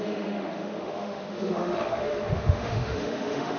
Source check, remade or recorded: remade